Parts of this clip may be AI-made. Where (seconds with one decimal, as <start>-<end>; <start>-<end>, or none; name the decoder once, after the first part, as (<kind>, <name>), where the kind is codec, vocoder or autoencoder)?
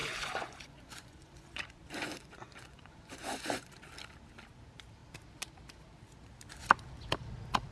0.0-3.7 (vocoder, Vocos)